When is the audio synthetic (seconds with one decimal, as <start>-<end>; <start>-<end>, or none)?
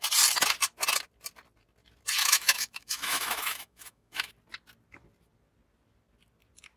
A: 2.2-4.3